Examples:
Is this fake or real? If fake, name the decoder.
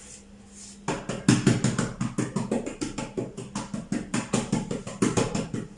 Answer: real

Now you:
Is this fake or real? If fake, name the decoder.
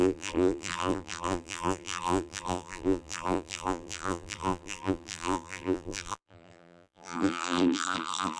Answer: fake, vocoder, BigVGAN v2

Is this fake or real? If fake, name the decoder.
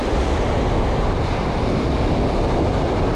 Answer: real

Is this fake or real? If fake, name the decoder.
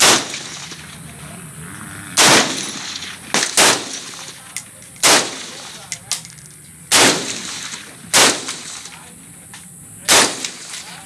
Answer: real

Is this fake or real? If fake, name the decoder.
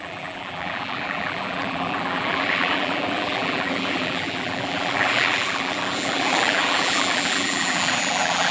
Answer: fake, vocoder, BigVGAN v2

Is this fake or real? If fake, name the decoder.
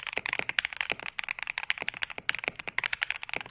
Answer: real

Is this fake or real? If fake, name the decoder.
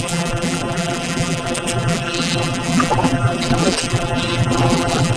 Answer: fake, vocoder, BigVGAN v2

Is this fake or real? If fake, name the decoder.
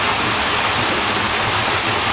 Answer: real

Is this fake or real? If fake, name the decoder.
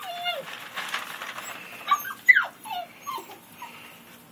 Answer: fake, vocoder, BigVGAN v2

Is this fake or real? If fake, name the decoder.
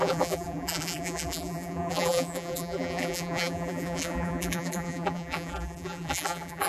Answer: fake, vocoder, BigVGAN v2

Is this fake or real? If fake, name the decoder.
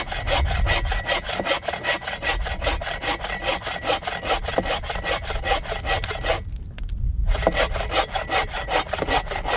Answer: fake, vocoder, BigVGAN v2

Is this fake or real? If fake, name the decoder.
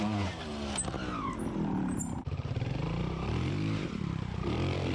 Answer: fake, vocoder, BigVGAN v2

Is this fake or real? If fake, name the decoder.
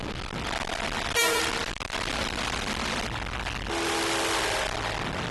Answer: real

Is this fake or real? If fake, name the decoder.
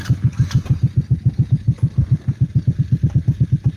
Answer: real